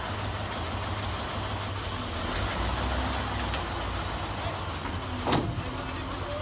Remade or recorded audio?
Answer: recorded